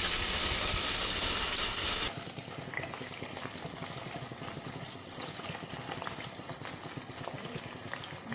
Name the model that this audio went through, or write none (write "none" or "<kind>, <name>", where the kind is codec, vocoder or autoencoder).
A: none